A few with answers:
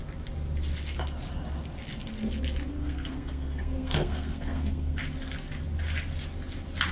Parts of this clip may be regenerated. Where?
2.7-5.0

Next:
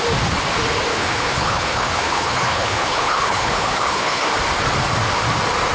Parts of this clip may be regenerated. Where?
0.9-4.3

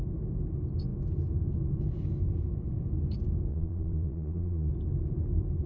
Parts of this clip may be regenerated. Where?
3.5-4.7

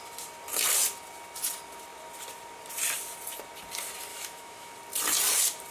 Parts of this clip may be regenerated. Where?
4.1-4.7